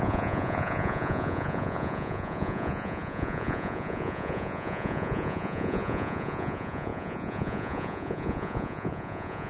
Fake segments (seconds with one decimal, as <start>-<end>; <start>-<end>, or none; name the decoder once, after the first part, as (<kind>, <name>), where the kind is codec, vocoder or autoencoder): 0.0-9.5 (vocoder, Vocos)